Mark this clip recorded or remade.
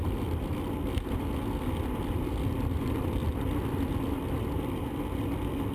recorded